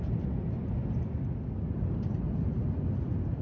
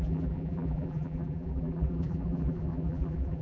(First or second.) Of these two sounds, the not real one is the second